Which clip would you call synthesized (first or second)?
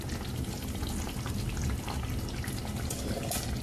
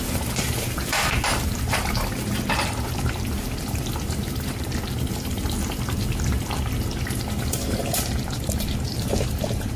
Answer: second